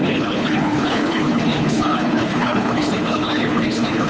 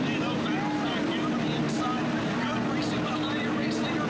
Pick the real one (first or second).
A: second